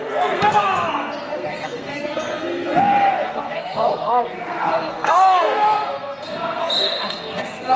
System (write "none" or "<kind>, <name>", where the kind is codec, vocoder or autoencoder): codec, SNAC